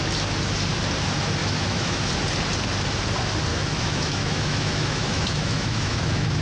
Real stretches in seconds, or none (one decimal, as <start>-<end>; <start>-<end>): 0.0-1.4; 2.1-3.5

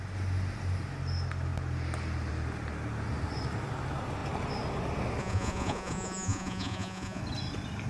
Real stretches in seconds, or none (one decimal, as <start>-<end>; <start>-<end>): 0.0-5.2; 7.2-7.9

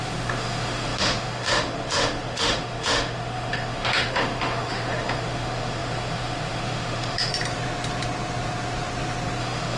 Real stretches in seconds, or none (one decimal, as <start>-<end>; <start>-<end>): 7.3-9.4

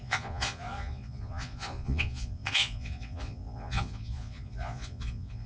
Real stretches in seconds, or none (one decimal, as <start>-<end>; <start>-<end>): none

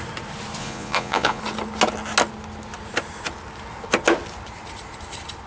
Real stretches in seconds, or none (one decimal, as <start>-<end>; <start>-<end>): 0.0-0.6; 1.4-5.5

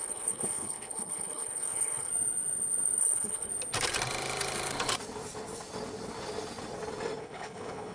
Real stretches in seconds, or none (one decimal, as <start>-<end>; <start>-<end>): 2.1-3.0; 3.5-7.2

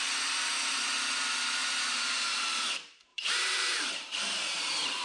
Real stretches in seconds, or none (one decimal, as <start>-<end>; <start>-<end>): 0.0-1.6; 2.1-3.1